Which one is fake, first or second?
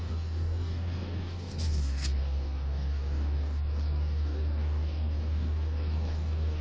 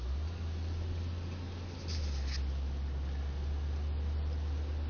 first